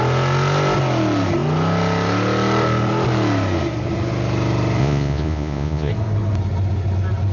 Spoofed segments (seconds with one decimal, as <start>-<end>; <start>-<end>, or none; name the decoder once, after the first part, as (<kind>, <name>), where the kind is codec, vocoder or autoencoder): 4.8-5.9 (vocoder, Vocos)